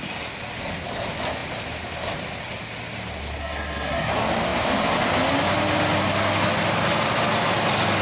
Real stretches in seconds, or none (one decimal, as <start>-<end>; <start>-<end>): 0.0-3.4; 4.1-8.0